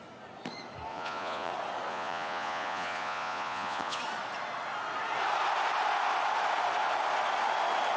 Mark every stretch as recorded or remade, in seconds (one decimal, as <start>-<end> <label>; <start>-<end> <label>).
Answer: 0.0-0.9 recorded; 0.9-1.5 remade; 1.5-1.9 recorded; 1.9-4.0 remade; 4.0-8.0 recorded